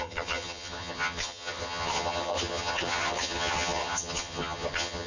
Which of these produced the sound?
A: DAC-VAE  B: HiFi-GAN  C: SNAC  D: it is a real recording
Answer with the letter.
B